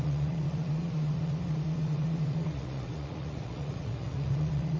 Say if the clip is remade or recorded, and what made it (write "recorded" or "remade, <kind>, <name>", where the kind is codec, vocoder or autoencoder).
remade, vocoder, Vocos